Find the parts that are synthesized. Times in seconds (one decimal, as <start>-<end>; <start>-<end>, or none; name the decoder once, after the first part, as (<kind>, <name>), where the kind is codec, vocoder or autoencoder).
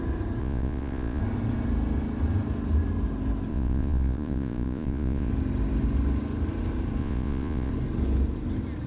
0.4-1.2 (vocoder, Vocos); 3.5-5.3; 7.0-7.7